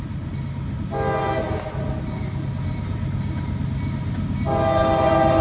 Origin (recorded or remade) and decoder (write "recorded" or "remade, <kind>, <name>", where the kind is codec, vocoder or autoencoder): recorded